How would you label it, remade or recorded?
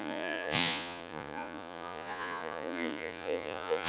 remade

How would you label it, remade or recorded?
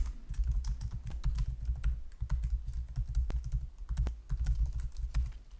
recorded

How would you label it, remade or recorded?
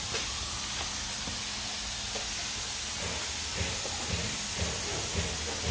recorded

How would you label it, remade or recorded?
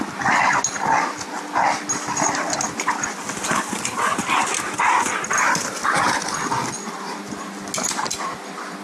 recorded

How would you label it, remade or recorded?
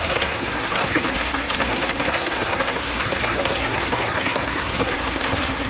remade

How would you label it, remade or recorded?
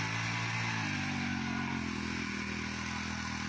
recorded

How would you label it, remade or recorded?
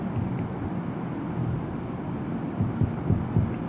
recorded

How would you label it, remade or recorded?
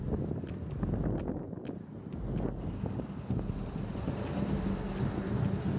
recorded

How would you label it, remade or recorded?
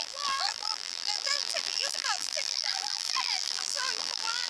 remade